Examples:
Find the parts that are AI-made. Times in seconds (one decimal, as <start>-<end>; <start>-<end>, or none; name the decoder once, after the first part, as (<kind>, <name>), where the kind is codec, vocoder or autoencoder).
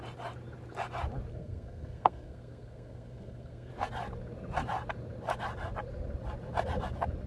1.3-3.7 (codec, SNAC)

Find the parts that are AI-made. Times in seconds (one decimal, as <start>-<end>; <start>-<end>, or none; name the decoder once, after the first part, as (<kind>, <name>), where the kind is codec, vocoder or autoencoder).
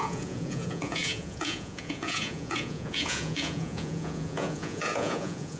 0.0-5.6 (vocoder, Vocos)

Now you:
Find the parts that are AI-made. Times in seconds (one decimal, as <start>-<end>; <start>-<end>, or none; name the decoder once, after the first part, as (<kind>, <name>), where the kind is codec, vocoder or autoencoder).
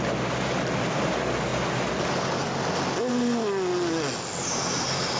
none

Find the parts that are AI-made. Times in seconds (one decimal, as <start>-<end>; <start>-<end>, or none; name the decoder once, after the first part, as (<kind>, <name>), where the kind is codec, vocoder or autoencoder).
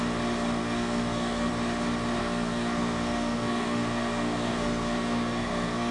0.6-1.5 (codec, SNAC); 2.2-5.9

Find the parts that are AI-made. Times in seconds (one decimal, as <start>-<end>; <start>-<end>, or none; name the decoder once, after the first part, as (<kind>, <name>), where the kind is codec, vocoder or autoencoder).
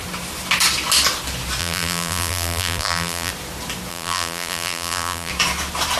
1.6-3.3 (vocoder, BigVGAN v2); 3.9-5.3